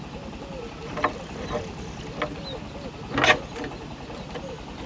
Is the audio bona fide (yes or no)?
yes